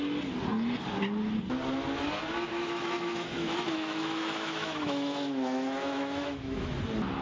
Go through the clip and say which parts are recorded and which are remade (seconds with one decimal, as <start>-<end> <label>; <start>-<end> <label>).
0.0-2.5 recorded; 2.5-6.8 remade; 6.8-7.2 recorded